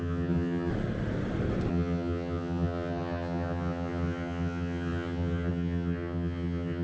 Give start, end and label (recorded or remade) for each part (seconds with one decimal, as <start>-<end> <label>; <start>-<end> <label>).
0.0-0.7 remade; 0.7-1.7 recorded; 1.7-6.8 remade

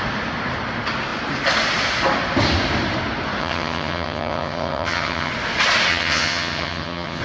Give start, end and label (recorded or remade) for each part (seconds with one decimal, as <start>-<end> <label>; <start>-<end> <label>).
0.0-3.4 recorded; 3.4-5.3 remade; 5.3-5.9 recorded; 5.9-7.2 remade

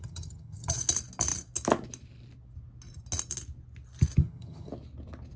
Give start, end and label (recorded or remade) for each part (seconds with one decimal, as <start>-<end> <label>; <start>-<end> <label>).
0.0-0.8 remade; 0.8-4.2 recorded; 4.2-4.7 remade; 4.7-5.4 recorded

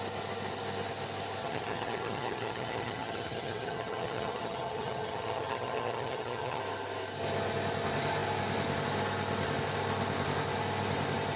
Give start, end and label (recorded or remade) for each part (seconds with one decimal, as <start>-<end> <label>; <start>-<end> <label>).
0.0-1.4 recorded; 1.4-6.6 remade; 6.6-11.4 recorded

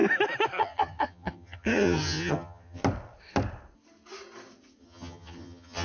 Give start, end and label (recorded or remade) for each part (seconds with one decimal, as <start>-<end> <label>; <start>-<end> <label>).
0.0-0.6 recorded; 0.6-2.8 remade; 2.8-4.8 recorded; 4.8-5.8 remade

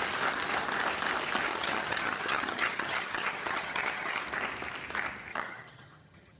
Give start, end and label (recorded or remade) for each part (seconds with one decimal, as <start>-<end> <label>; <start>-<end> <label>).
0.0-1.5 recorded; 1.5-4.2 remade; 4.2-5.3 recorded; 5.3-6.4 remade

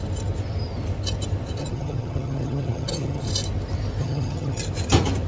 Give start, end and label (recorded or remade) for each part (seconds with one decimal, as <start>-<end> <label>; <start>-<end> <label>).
0.0-1.6 recorded; 1.6-3.3 remade; 3.3-4.0 recorded; 4.0-4.6 remade; 4.6-5.3 recorded

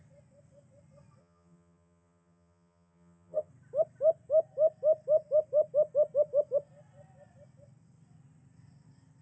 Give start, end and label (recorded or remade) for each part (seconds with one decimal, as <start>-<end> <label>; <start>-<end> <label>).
0.0-1.2 recorded; 1.2-3.5 remade; 3.5-9.2 recorded